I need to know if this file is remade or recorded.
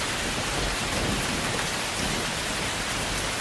recorded